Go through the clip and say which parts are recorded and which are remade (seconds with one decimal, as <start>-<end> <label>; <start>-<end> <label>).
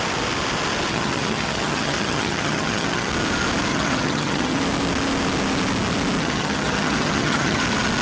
0.0-0.9 recorded; 0.9-3.1 remade; 3.1-3.7 recorded; 3.7-4.6 remade; 4.6-6.2 recorded; 6.2-7.6 remade; 7.6-8.0 recorded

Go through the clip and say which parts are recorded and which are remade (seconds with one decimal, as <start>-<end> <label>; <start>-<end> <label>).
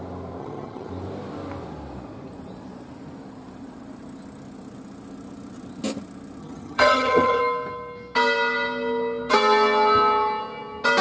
0.0-0.4 recorded; 0.4-0.9 remade; 0.9-6.4 recorded; 6.4-7.4 remade; 7.4-11.0 recorded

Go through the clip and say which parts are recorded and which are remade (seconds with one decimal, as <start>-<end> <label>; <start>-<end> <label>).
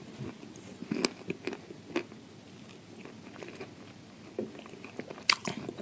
0.0-5.8 recorded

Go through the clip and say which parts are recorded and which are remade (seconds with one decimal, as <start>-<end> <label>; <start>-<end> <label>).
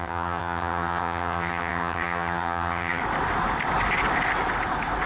0.0-3.0 remade; 3.0-5.1 recorded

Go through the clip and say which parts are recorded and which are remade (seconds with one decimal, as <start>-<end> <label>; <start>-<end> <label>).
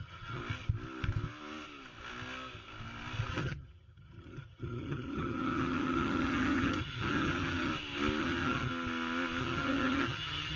0.0-0.4 remade; 0.4-3.3 recorded; 3.3-7.7 remade; 7.7-8.2 recorded; 8.2-8.7 remade; 8.7-9.4 recorded; 9.4-10.6 remade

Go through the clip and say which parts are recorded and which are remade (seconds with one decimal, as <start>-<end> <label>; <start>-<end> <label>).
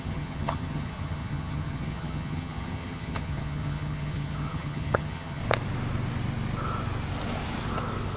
0.0-5.4 remade; 5.4-8.2 recorded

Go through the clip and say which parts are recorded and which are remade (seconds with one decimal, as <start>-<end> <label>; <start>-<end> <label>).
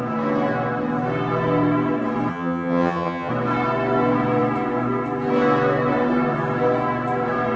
0.0-2.3 recorded; 2.3-3.3 remade; 3.3-7.6 recorded